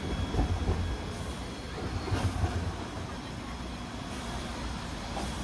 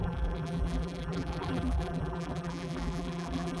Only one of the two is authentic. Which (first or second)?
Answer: first